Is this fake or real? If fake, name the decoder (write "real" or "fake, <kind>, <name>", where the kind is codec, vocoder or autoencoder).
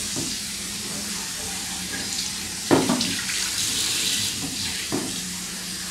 fake, vocoder, BigVGAN v2